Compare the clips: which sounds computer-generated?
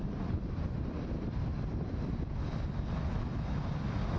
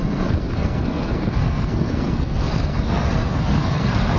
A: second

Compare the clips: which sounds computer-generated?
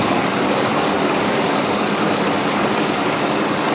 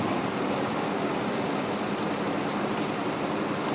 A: first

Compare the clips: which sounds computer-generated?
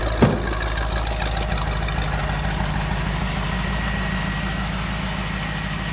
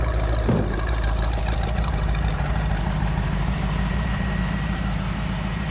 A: second